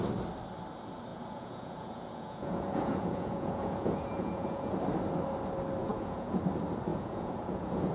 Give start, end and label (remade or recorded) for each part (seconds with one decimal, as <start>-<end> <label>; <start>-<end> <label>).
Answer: 0.0-1.1 recorded; 1.1-4.7 remade; 4.7-5.8 recorded; 5.8-6.4 remade; 6.4-6.9 recorded; 6.9-7.9 remade